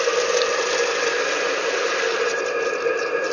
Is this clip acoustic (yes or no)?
yes